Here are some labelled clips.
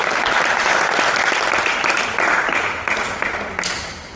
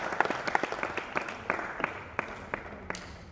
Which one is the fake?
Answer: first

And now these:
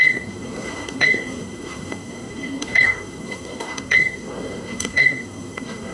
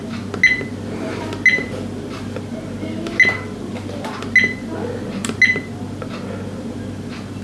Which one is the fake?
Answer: first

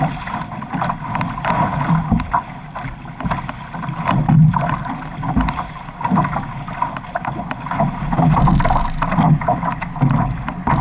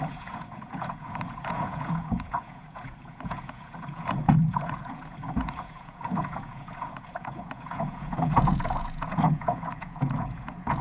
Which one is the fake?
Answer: second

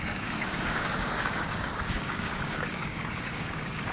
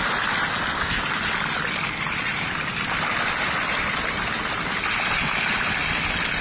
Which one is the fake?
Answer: first